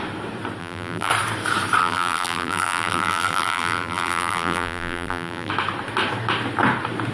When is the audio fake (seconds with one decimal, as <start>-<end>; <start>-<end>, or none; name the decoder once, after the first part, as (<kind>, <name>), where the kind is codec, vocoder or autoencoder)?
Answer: 0.6-1.1 (vocoder, BigVGAN v2); 1.8-5.5